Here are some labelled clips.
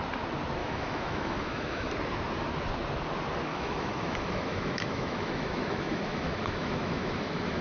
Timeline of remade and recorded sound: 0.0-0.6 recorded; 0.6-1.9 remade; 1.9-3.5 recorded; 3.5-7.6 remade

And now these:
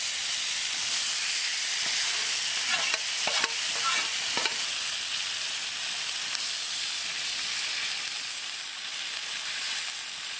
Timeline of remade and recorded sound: 0.0-10.4 recorded

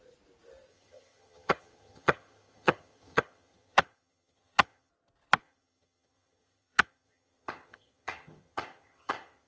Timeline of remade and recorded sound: 0.0-0.7 recorded; 0.7-4.9 remade; 4.9-5.4 recorded; 5.4-9.5 remade

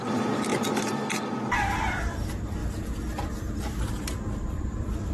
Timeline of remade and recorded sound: 0.0-0.5 remade; 0.5-1.8 recorded; 1.8-2.6 remade; 2.6-3.5 recorded; 3.5-5.1 remade

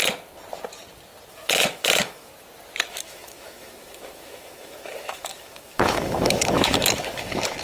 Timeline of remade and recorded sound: 0.0-1.3 recorded; 1.3-2.3 remade; 2.3-2.9 recorded; 2.9-7.6 remade